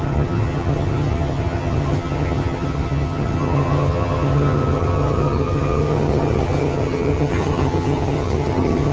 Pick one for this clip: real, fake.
fake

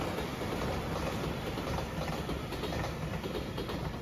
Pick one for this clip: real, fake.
real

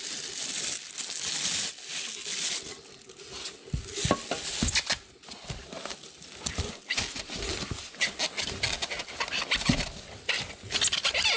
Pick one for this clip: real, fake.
real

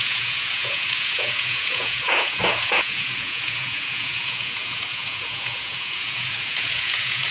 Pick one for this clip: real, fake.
fake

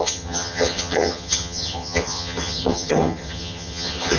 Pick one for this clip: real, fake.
fake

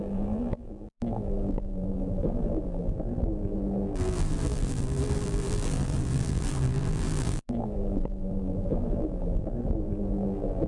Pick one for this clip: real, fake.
fake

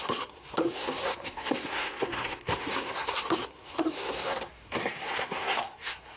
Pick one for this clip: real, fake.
fake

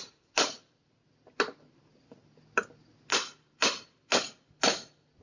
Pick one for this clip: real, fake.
real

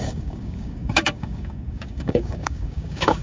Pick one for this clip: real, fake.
fake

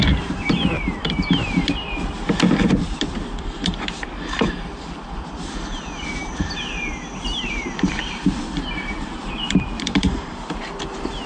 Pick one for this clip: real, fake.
fake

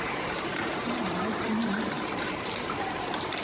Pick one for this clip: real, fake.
fake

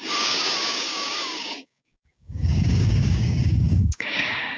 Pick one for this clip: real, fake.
fake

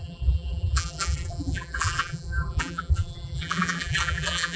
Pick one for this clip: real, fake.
fake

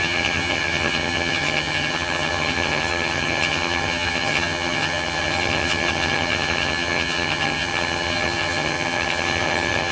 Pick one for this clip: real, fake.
fake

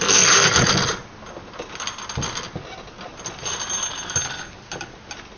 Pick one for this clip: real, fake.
real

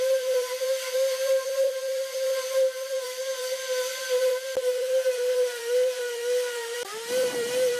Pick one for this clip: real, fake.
fake